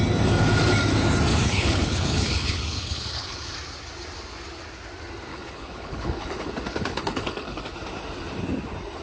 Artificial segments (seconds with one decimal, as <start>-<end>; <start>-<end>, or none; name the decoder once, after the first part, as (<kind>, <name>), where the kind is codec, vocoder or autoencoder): 1.3-3.5 (codec, HILCodec); 5.3-6.5; 6.9-7.6